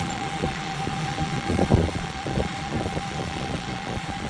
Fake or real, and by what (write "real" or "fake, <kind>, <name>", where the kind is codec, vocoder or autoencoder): fake, vocoder, Vocos